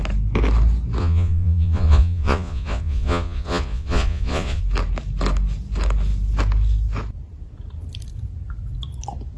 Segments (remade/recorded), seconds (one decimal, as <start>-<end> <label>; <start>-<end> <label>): 0.0-1.0 recorded; 1.0-4.6 remade; 4.6-9.4 recorded